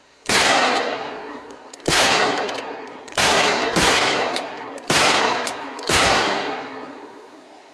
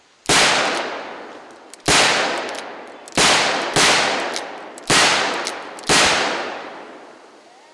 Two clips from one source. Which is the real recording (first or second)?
second